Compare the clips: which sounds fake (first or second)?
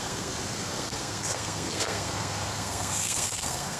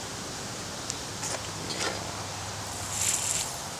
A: first